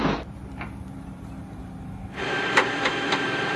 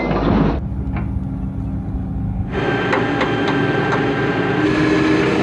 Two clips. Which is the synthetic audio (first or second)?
first